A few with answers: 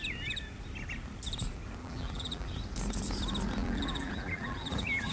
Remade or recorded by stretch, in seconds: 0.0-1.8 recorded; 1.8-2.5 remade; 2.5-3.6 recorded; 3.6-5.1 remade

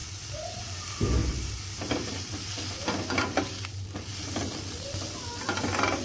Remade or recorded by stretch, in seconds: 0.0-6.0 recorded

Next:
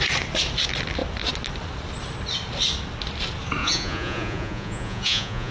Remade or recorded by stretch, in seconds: 0.0-3.6 recorded; 3.6-5.5 remade